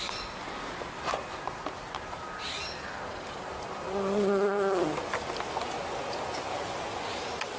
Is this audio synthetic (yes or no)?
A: no